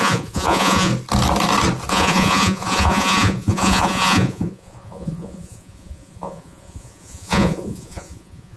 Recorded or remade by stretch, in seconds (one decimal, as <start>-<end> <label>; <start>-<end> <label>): 0.0-0.9 remade; 0.9-1.9 recorded; 1.9-8.6 remade